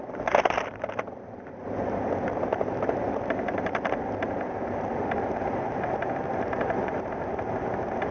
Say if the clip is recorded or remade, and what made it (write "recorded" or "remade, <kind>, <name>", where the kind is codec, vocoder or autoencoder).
remade, vocoder, BigVGAN v2